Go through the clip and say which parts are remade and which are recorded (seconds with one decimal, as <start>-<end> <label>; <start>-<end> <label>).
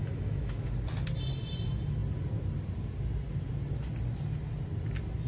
0.0-0.6 remade; 0.6-5.3 recorded